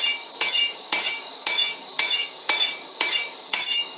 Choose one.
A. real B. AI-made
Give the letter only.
B